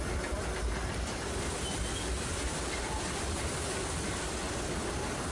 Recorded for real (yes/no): yes